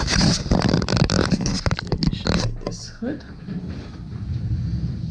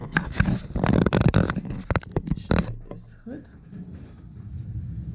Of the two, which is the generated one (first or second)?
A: first